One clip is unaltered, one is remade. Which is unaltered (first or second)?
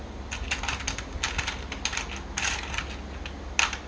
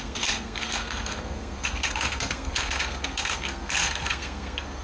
first